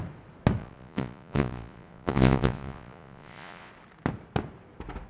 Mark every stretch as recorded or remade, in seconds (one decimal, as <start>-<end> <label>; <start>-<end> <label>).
0.0-0.6 recorded; 0.6-3.7 remade; 3.7-5.1 recorded